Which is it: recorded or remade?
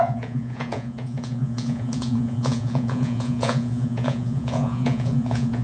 remade